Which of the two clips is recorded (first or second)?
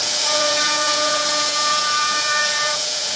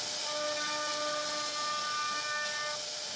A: second